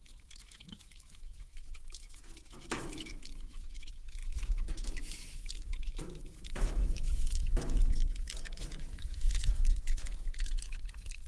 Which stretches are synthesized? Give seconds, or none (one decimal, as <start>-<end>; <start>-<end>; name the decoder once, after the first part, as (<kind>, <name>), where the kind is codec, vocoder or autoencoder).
0.0-11.3 (autoencoder, DAC-VAE)